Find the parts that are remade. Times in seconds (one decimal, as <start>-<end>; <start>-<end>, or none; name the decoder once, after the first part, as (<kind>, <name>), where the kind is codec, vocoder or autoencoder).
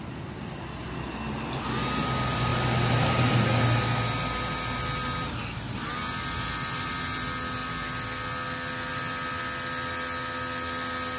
none